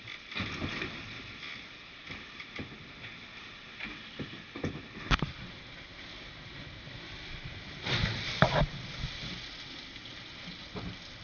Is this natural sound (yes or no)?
yes